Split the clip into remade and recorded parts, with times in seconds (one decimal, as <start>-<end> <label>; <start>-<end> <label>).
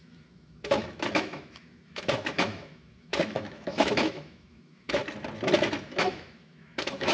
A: 0.0-5.0 remade; 5.0-5.6 recorded; 5.6-7.1 remade